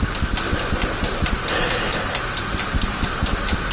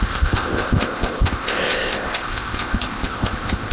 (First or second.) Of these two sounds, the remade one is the second